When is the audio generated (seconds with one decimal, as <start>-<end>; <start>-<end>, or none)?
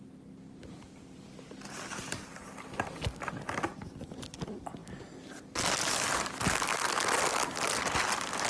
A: none